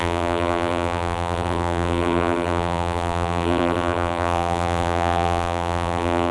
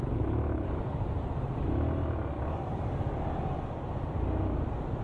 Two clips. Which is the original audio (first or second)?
second